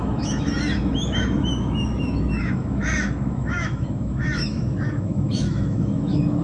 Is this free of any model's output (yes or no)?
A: no